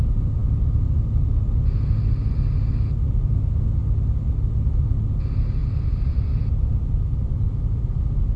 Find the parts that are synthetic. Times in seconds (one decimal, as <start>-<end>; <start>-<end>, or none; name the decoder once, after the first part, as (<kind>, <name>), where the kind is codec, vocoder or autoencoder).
5.6-8.0 (vocoder, BigVGAN v2)